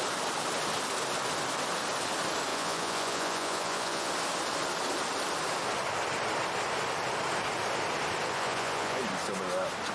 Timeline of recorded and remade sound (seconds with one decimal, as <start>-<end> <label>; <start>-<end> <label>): 0.0-2.5 recorded; 2.5-4.1 remade; 4.1-8.3 recorded; 8.3-9.0 remade; 9.0-9.9 recorded